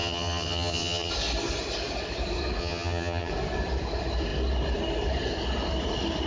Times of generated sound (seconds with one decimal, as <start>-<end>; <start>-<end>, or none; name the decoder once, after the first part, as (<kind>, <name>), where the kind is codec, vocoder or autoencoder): 0.0-1.1 (vocoder, HiFi-GAN); 2.6-3.3